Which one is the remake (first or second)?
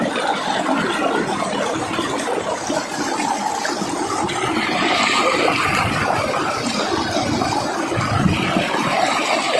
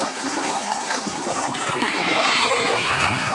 second